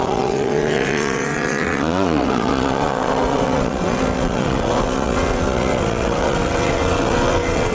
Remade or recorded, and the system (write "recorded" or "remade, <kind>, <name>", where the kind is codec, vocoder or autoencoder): remade, vocoder, WaveNeXt